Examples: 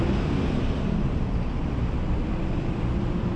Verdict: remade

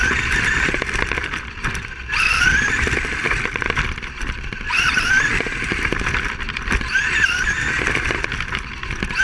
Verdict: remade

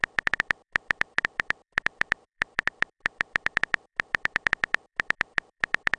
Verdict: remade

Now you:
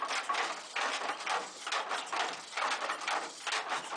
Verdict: recorded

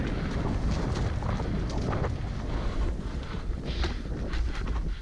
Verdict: recorded